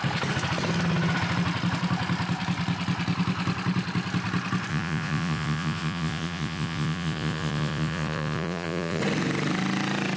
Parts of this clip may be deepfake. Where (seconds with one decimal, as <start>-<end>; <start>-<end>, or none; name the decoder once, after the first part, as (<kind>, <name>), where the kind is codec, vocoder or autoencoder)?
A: 4.7-9.0 (vocoder, Vocos)